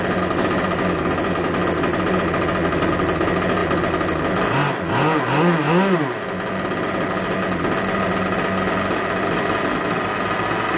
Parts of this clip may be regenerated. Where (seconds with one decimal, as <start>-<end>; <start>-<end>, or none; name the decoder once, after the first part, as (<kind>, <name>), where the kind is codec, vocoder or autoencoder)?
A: none

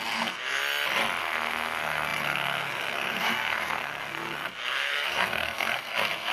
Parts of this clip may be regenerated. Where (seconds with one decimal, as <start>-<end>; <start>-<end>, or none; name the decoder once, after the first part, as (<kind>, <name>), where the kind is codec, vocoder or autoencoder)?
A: 0.0-0.6 (codec, SNAC); 1.2-6.3

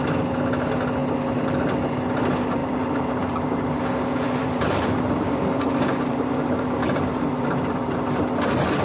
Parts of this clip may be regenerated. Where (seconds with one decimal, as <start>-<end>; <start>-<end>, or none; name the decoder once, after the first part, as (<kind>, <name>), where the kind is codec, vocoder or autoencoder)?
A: 2.6-3.8 (vocoder, BigVGAN v2); 4.4-7.9

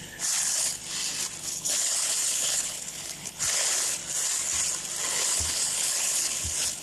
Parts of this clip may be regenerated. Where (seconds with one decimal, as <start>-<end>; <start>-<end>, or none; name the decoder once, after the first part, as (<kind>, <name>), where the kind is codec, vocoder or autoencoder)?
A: 0.0-0.8 (codec, HILCodec); 1.4-4.0; 5.1-6.8